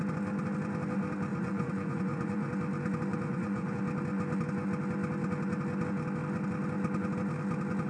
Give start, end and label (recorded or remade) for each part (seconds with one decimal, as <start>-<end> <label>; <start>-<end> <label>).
0.0-1.3 recorded; 1.3-2.5 remade; 2.5-3.1 recorded; 3.1-3.8 remade; 3.8-7.9 recorded